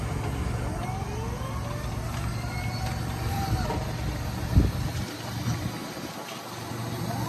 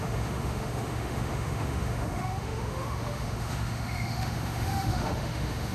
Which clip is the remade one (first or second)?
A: second